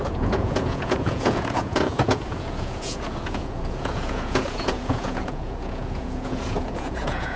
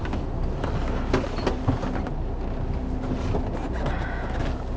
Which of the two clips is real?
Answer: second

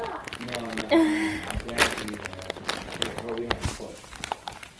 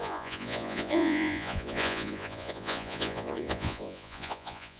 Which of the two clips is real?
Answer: first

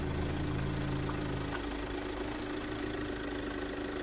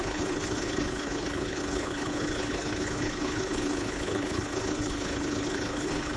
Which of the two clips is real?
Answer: first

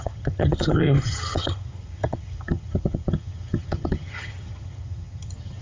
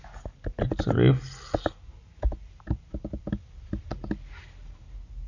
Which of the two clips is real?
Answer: second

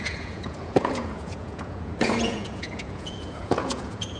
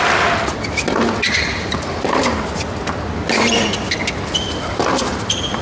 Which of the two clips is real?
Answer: second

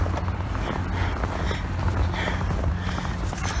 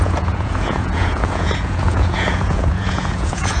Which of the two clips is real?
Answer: first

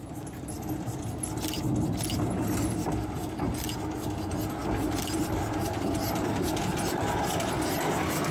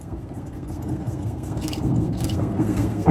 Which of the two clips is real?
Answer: first